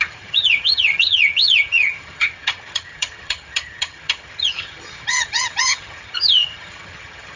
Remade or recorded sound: remade